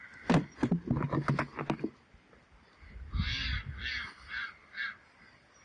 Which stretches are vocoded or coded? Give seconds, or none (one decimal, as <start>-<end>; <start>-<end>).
none